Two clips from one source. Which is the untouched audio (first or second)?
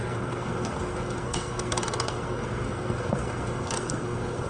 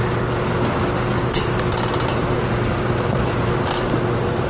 second